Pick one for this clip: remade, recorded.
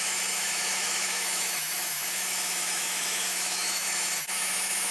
remade